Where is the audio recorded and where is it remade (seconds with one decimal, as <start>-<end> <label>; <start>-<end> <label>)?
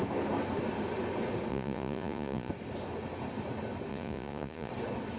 0.0-1.5 recorded; 1.5-2.5 remade; 2.5-3.9 recorded; 3.9-4.7 remade; 4.7-5.2 recorded